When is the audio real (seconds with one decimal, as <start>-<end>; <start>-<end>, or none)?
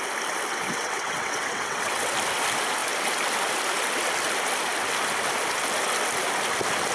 0.0-0.5; 2.1-6.9